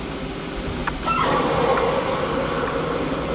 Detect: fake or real real